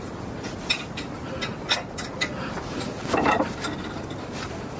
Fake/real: real